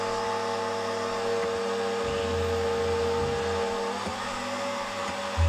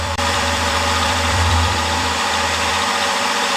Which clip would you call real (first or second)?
first